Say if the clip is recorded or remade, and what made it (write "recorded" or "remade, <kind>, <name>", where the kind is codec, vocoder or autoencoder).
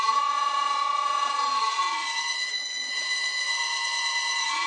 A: remade, vocoder, Vocos